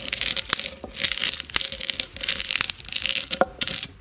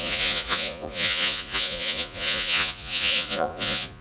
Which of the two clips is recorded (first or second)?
first